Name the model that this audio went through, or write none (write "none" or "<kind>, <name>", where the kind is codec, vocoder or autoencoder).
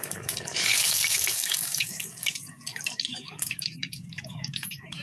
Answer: codec, DAC